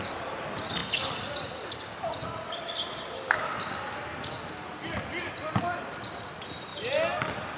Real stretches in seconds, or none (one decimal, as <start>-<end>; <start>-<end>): 0.0-7.6